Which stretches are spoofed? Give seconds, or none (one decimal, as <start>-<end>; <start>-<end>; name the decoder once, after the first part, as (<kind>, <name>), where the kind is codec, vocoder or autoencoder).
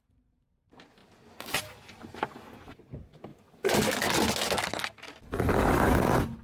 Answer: none